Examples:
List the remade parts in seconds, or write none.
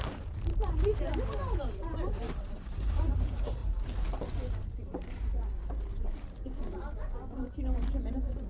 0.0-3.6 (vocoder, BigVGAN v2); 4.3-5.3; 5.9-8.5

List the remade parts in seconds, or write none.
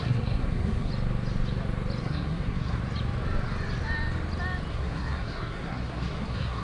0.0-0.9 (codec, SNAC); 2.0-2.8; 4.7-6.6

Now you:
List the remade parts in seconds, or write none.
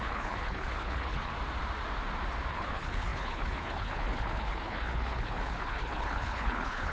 0.0-1.3 (codec, HILCodec); 2.5-6.9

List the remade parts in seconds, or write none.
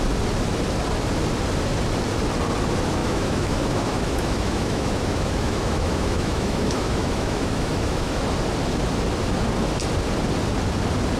3.0-8.2 (autoencoder, DAC-VAE)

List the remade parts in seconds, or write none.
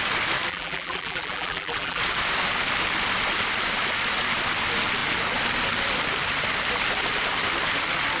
0.5-2.0 (vocoder, BigVGAN v2)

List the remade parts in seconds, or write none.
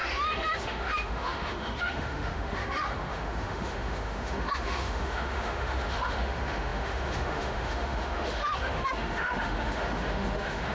0.0-10.7 (autoencoder, DAC-VAE)